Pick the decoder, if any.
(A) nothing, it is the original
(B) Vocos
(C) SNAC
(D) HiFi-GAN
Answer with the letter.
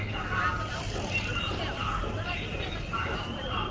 A